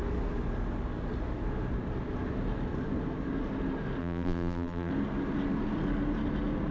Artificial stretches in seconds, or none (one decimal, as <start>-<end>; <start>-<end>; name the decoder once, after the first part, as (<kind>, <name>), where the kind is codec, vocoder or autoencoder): 4.0-4.9 (vocoder, BigVGAN v2)